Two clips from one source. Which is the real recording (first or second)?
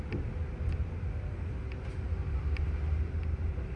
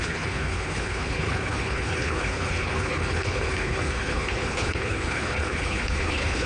first